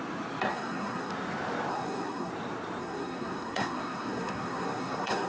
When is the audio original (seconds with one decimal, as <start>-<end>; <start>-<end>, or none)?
0.0-0.5; 1.1-1.7; 2.3-2.8